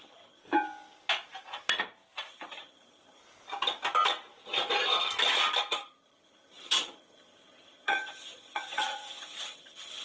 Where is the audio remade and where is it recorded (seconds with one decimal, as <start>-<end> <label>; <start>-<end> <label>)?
0.0-0.4 remade; 0.4-2.3 recorded; 2.3-3.2 remade; 3.2-5.7 recorded; 5.7-10.0 remade